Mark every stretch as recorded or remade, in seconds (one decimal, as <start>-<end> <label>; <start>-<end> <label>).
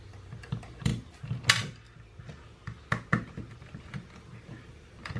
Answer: 0.0-0.9 remade; 0.9-3.8 recorded; 3.8-5.2 remade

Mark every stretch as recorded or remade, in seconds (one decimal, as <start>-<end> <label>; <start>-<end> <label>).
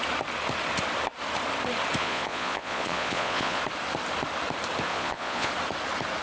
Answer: 0.0-2.0 recorded; 2.0-3.6 remade; 3.6-4.9 recorded; 4.9-5.5 remade; 5.5-6.2 recorded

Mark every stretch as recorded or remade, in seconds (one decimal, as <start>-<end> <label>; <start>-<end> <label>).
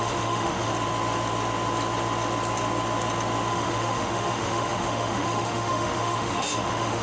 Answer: 0.0-0.7 remade; 0.7-3.5 recorded; 3.5-7.0 remade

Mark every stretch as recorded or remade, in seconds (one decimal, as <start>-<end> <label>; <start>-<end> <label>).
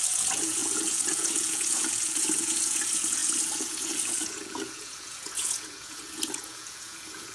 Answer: 0.0-7.3 remade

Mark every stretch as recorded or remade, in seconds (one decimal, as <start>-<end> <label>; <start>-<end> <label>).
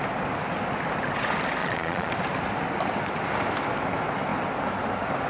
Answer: 0.0-1.6 recorded; 1.6-2.1 remade; 2.1-5.3 recorded